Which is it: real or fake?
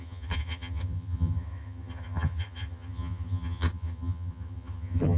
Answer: fake